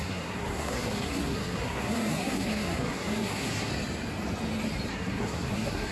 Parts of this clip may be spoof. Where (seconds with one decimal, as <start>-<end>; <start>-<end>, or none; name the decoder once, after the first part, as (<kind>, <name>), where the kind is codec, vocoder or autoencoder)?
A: 0.0-3.7 (codec, SNAC); 4.9-5.9